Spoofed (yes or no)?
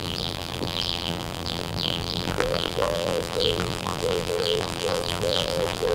yes